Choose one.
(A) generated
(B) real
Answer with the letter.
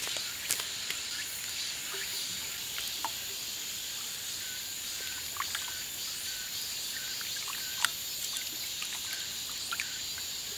B